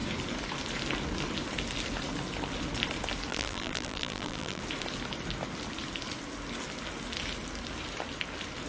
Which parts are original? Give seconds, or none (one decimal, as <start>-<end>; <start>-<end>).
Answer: 0.0-3.3; 4.6-8.7